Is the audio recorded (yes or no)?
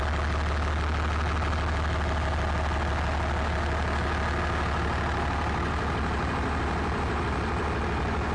yes